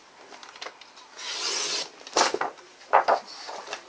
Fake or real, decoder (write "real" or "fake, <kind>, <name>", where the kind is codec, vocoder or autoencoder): real